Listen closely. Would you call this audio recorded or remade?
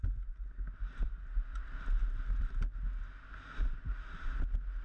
recorded